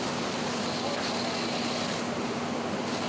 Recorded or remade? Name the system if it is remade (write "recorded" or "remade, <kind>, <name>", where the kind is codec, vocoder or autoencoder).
recorded